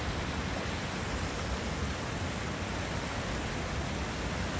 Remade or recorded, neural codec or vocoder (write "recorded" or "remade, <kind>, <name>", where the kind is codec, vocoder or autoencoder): recorded